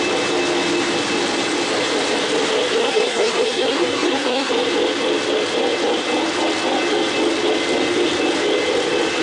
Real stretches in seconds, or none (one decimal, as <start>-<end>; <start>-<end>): 0.0-2.8; 4.5-9.2